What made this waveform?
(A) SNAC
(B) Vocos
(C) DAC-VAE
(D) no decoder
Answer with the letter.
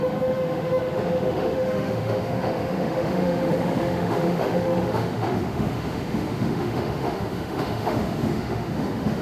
C